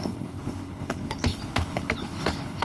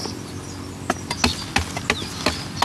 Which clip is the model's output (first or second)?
first